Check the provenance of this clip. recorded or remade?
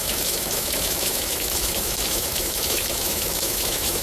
remade